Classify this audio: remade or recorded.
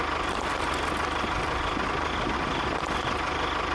recorded